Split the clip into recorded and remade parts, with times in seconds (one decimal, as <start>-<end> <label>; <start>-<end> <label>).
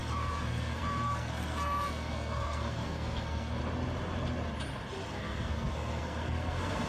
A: 0.0-3.6 remade; 3.6-5.1 recorded; 5.1-6.9 remade